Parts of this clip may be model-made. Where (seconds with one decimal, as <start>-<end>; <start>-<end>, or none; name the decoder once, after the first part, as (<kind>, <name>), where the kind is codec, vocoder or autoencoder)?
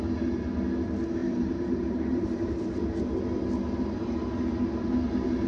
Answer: 1.2-3.0 (vocoder, BigVGAN v2)